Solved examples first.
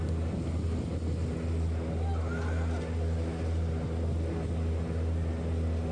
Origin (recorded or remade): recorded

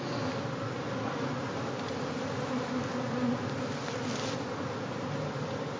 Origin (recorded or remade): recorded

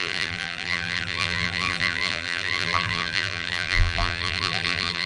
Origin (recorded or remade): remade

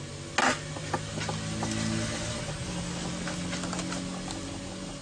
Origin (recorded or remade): recorded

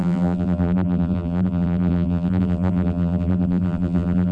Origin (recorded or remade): remade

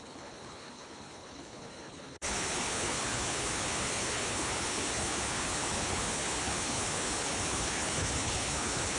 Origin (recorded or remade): remade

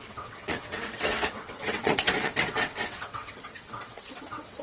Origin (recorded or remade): remade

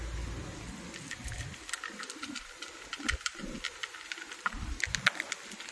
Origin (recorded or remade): recorded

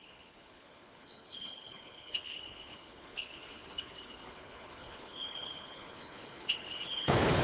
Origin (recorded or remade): remade